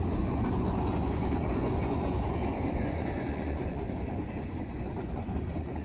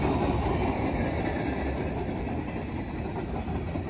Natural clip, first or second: second